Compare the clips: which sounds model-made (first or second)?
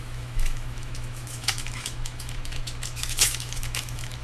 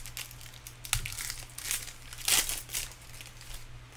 first